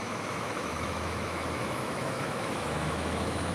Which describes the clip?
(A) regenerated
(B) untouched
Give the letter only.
A